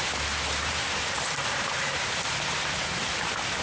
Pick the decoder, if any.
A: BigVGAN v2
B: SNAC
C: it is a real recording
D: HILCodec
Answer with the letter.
A